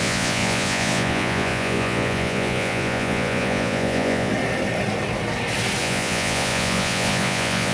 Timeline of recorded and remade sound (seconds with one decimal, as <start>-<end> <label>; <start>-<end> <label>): 0.0-4.3 remade; 4.3-5.8 recorded; 5.8-7.7 remade